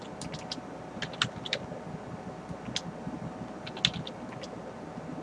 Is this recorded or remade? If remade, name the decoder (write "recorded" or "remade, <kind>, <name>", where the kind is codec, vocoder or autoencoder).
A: recorded